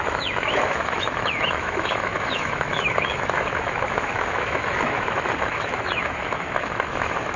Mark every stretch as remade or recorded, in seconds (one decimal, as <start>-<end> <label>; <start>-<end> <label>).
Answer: 0.0-7.4 remade